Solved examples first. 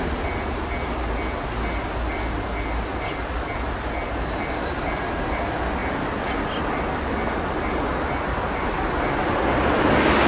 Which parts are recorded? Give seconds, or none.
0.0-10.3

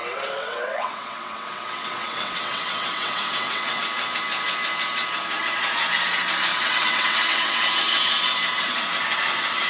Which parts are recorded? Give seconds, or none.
3.8-6.5; 7.7-9.7

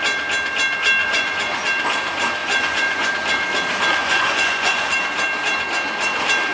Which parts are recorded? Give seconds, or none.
0.0-1.0; 1.6-2.4; 3.1-4.0; 4.9-6.5

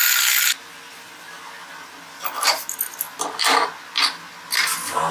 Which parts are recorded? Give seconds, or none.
2.7-5.1

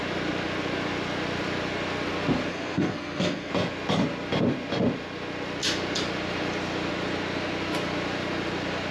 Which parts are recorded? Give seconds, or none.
0.0-2.5; 3.5-8.9

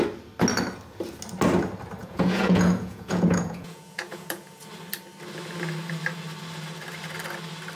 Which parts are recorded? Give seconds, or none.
0.0-2.0; 4.6-7.8